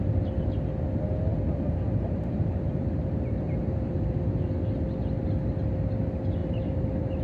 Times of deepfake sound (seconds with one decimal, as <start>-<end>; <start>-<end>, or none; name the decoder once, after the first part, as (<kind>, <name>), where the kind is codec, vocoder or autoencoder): 1.3-4.5 (vocoder, BigVGAN v2); 6.4-7.2